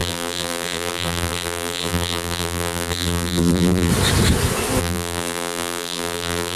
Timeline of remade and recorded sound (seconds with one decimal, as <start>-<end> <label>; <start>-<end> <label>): 0.0-3.9 remade; 3.9-4.8 recorded; 4.8-6.6 remade